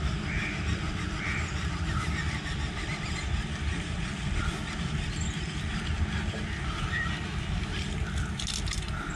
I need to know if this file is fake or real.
real